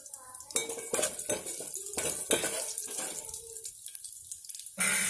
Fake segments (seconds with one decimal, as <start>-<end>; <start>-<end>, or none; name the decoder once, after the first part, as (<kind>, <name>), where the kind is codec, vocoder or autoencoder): none